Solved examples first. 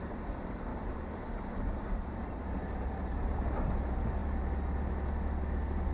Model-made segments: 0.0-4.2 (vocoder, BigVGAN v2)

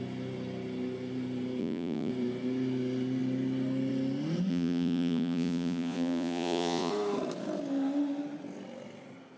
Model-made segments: 1.6-2.1 (vocoder, Vocos); 4.5-6.9

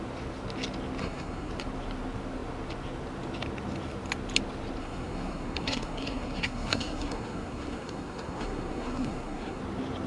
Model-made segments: 1.0-1.5 (codec, SNAC); 4.8-9.6

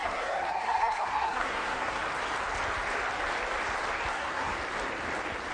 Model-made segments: 0.0-2.0 (codec, SNAC); 4.1-4.5